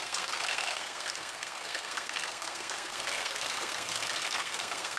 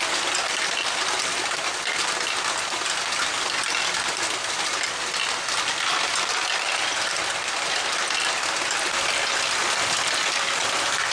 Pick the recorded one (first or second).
second